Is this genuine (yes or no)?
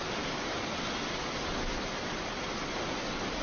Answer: yes